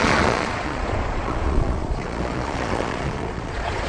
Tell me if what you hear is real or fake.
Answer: fake